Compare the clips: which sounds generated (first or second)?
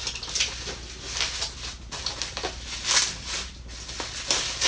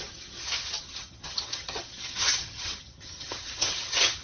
second